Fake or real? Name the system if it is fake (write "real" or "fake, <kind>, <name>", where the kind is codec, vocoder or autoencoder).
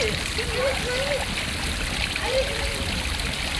fake, vocoder, BigVGAN v2